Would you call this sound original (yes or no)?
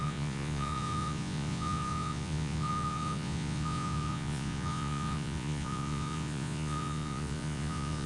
no